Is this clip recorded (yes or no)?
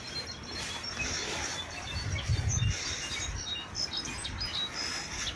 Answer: yes